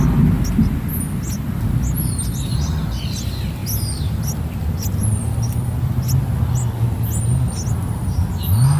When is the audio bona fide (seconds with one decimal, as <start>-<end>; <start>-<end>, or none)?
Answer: 0.0-8.8